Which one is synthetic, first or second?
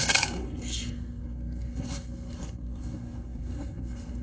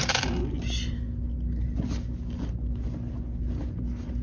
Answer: first